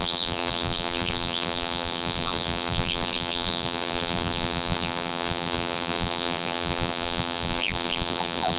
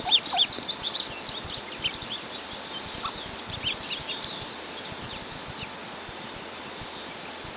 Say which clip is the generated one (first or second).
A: first